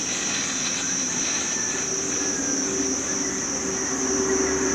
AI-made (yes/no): no